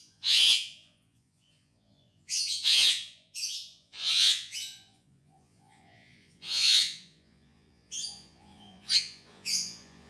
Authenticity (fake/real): fake